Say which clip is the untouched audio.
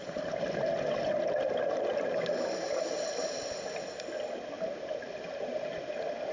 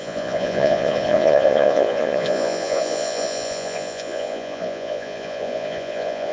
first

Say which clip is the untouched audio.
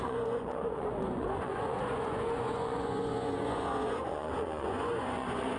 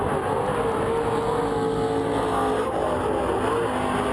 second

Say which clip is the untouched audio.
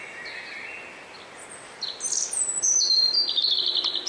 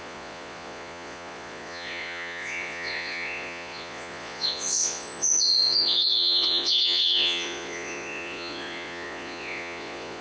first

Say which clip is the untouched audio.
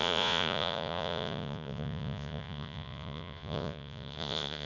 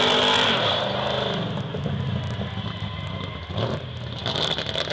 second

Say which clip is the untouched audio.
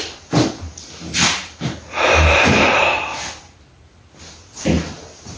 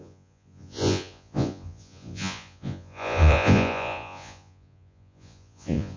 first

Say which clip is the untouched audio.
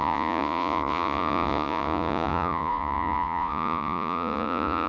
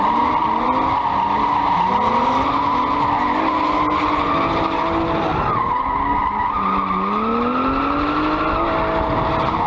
second